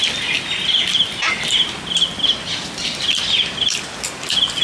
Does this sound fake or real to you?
real